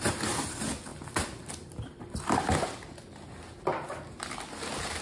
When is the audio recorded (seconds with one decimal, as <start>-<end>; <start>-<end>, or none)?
0.0-5.0